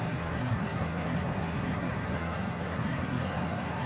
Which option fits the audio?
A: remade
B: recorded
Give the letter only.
A